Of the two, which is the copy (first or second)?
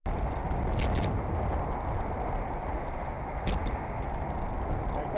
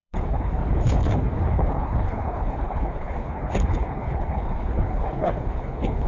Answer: second